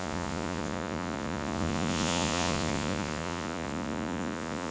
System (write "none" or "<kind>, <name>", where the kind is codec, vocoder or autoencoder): vocoder, Vocos